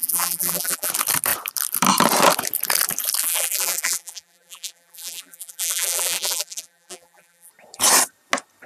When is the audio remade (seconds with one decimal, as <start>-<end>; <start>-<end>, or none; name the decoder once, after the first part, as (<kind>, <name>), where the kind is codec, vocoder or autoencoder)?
0.0-0.9 (vocoder, BigVGAN v2); 3.2-7.5